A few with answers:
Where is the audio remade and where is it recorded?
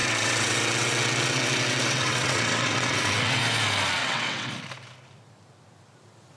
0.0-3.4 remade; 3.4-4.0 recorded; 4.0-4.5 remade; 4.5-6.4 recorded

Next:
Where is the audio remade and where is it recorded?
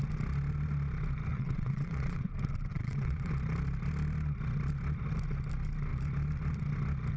0.0-1.3 recorded; 1.3-2.3 remade; 2.3-2.7 recorded; 2.7-3.3 remade; 3.3-7.2 recorded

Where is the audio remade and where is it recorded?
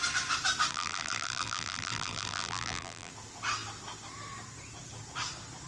0.0-0.7 recorded; 0.7-3.1 remade; 3.1-5.7 recorded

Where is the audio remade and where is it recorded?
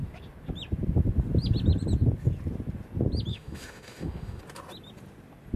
0.0-3.3 recorded; 3.3-4.4 remade; 4.4-5.6 recorded